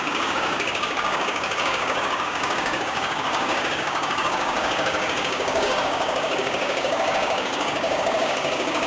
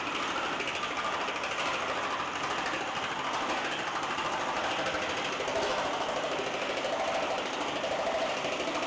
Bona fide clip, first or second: second